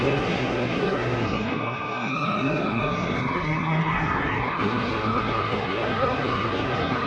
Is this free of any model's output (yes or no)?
no